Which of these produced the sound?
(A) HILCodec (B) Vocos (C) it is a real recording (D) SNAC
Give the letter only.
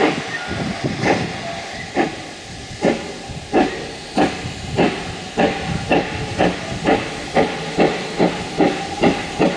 C